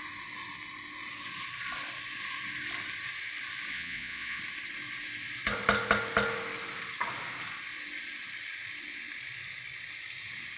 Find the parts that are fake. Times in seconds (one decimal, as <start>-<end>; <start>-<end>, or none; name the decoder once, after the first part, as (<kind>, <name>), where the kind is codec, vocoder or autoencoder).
3.7-4.4 (vocoder, Vocos)